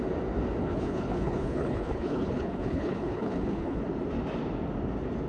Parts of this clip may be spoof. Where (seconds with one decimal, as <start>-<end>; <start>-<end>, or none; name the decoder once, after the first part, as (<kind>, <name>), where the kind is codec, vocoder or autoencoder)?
0.6-3.8 (codec, HILCodec)